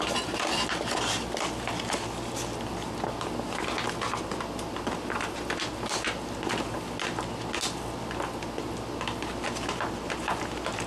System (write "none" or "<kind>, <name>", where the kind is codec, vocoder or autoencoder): none